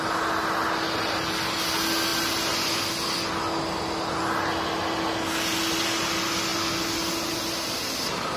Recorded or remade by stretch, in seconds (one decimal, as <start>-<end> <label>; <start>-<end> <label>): 0.0-8.4 recorded